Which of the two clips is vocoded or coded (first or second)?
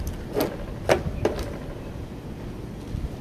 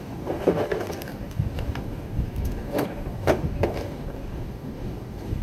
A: second